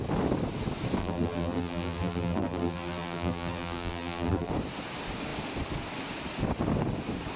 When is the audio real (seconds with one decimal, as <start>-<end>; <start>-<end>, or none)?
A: 0.0-1.0; 4.5-7.4